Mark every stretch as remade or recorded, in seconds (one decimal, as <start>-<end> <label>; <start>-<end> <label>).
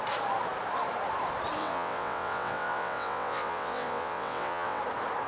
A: 0.0-1.6 recorded; 1.6-4.8 remade; 4.8-5.3 recorded